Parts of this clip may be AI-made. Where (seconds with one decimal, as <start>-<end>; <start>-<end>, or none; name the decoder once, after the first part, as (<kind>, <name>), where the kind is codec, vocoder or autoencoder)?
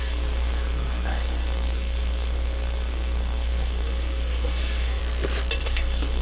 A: 0.0-5.0 (codec, SNAC); 5.6-6.2